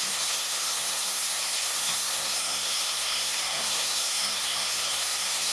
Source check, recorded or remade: remade